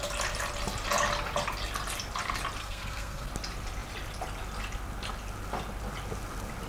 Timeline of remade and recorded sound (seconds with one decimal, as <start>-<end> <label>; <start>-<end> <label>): 0.0-2.6 recorded; 2.6-3.3 remade; 3.3-6.7 recorded